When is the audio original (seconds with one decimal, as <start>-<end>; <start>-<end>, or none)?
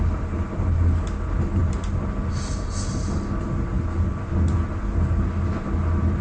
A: 0.0-6.2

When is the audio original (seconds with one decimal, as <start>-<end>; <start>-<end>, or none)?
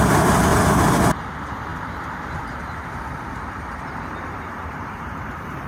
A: none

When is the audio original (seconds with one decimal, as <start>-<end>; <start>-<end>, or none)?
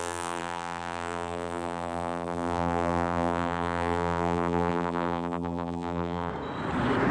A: 6.3-7.1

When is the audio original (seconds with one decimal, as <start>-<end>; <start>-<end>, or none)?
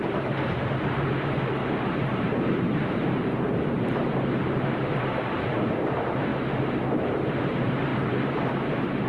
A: none